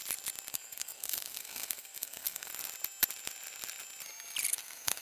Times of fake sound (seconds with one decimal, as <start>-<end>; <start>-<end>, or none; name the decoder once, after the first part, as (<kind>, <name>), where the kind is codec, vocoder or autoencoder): 0.5-2.5 (codec, SNAC); 4.5-5.0